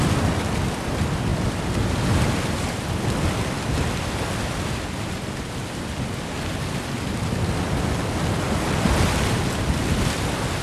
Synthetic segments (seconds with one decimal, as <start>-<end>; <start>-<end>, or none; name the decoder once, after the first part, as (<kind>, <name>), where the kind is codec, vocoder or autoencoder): none

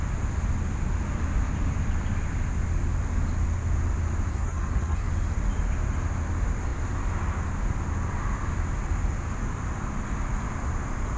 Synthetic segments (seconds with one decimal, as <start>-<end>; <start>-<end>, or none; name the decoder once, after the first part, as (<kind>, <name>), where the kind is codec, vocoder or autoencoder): 4.3-5.1 (codec, SNAC)

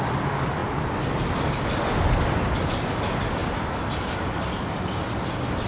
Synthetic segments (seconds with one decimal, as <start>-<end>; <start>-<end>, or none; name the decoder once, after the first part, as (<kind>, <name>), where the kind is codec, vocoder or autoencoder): none

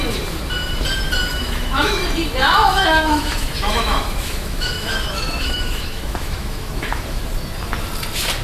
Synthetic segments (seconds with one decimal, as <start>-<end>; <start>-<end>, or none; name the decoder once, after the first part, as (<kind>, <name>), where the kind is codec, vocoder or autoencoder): 1.3-2.0 (autoencoder, DAC-VAE); 2.4-7.2